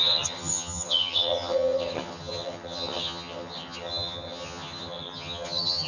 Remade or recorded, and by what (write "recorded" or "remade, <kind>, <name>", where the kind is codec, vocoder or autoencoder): remade, vocoder, HiFi-GAN